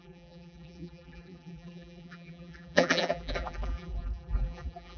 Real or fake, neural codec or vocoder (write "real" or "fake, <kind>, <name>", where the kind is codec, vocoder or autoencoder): fake, vocoder, BigVGAN v2